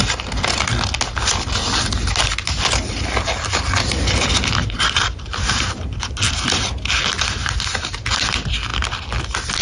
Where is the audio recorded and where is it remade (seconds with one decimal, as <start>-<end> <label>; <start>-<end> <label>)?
0.0-4.6 recorded; 4.6-5.8 remade; 5.8-9.6 recorded

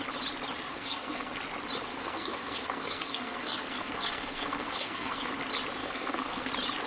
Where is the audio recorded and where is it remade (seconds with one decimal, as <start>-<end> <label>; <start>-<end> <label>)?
0.0-0.7 recorded; 0.7-1.3 remade; 1.3-1.9 recorded; 1.9-5.3 remade; 5.3-5.8 recorded; 5.8-6.5 remade; 6.5-6.9 recorded

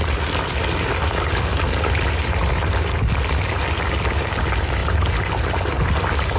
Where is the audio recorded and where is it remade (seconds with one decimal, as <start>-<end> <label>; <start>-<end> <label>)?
0.0-6.4 recorded

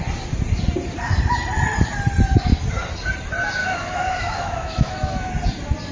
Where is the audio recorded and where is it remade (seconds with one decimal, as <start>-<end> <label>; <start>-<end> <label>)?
0.0-3.6 recorded; 3.6-5.3 remade; 5.3-5.9 recorded